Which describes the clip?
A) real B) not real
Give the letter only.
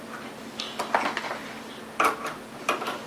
A